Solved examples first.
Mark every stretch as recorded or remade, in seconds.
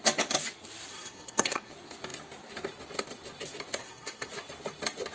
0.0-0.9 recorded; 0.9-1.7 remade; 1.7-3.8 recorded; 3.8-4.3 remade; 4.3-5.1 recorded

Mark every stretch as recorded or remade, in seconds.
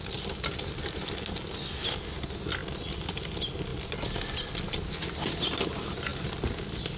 0.0-2.6 recorded; 2.6-3.2 remade; 3.2-7.0 recorded